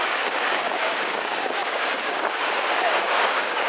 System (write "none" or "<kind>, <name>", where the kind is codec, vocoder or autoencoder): codec, DAC